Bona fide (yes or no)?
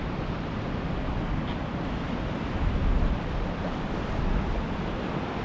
yes